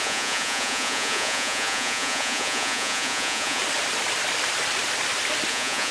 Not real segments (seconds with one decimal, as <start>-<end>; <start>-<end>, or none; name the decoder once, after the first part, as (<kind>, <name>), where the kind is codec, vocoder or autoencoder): 0.0-3.6 (vocoder, Vocos); 5.5-5.9